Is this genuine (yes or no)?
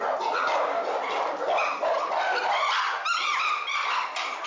yes